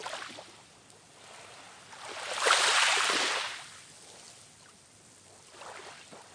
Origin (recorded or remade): recorded